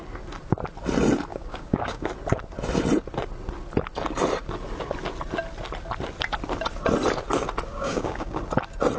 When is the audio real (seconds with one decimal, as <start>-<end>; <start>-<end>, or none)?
0.0-1.3; 2.1-7.7; 8.4-9.0